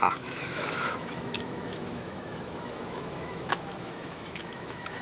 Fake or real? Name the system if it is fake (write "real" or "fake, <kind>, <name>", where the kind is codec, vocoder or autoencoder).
fake, autoencoder, DAC-VAE